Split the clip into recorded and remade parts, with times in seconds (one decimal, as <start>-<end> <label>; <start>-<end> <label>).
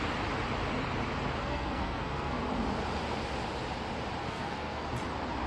0.0-1.4 recorded; 1.4-2.4 remade; 2.4-4.2 recorded; 4.2-4.9 remade; 4.9-5.5 recorded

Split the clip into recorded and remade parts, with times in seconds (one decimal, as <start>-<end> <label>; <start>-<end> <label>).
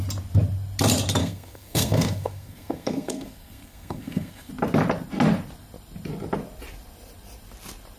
0.0-1.2 recorded; 1.2-4.5 remade; 4.5-8.0 recorded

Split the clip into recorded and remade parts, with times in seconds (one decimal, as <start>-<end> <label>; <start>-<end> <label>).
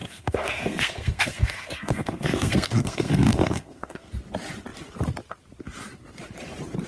0.0-4.1 remade; 4.1-6.9 recorded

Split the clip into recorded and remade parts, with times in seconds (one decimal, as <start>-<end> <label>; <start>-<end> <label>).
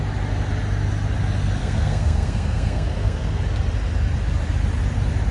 0.0-1.6 recorded; 1.6-3.4 remade; 3.4-5.3 recorded